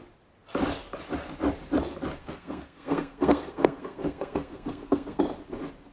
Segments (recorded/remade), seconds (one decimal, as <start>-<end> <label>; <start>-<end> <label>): 0.0-2.2 recorded; 2.2-5.2 remade; 5.2-5.9 recorded